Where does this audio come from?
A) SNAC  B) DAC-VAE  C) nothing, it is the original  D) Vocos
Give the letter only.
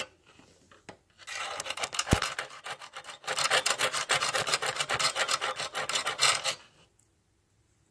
C